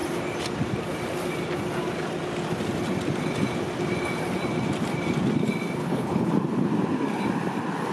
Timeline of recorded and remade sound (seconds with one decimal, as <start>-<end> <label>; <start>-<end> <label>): 0.0-5.8 recorded; 5.8-6.3 remade; 6.3-7.9 recorded

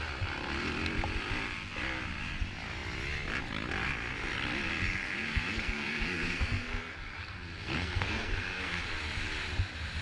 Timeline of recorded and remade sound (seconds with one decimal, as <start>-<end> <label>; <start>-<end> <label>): 0.0-4.7 recorded; 4.7-8.9 remade; 8.9-10.0 recorded

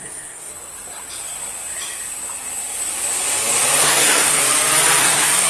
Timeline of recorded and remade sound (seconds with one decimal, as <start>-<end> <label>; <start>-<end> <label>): 0.0-0.5 remade; 0.5-3.8 recorded; 3.8-4.4 remade; 4.4-5.0 recorded; 5.0-5.5 remade

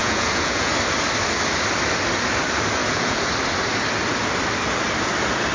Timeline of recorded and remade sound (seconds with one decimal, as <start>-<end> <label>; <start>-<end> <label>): 0.0-0.7 remade; 0.7-2.8 recorded; 2.8-3.3 remade; 3.3-5.5 recorded

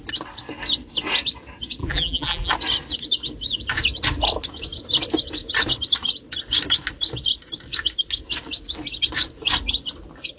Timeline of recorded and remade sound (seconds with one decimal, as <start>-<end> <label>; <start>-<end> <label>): 0.0-1.8 recorded; 1.8-2.5 remade; 2.5-10.4 recorded

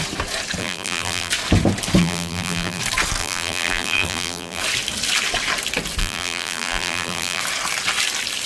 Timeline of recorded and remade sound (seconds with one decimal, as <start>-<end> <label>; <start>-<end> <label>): 0.0-0.6 recorded; 0.6-1.3 remade; 1.3-2.0 recorded; 2.0-2.8 remade; 2.8-3.2 recorded; 3.2-4.6 remade; 4.6-6.0 recorded; 6.0-7.4 remade; 7.4-8.5 recorded

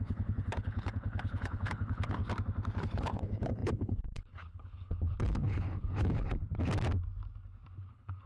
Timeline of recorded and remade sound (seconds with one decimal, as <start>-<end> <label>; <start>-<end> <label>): 0.0-2.2 remade; 2.2-2.8 recorded; 2.8-6.4 remade; 6.4-7.9 recorded; 7.9-8.3 remade